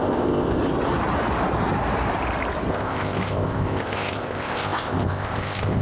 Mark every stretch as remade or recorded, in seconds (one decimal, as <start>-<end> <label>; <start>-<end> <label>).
0.0-0.6 remade; 0.6-2.7 recorded; 2.7-5.8 remade